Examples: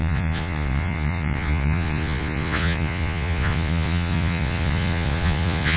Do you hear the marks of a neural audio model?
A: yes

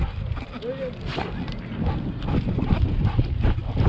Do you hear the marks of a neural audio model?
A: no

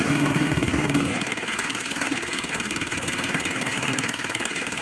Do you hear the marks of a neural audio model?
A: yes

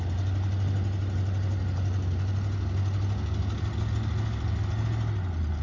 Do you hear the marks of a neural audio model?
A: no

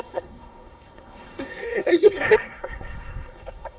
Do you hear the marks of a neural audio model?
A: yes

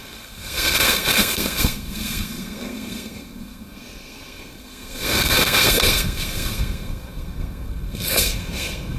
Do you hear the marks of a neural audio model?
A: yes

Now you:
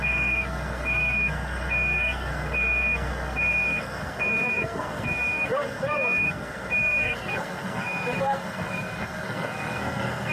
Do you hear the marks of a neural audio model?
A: yes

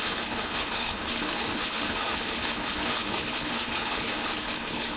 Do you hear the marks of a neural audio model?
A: yes